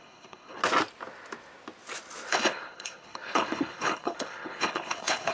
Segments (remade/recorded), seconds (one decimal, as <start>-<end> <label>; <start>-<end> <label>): 0.0-0.6 remade; 0.6-2.3 recorded; 2.3-5.3 remade